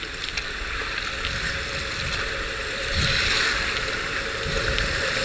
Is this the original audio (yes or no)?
yes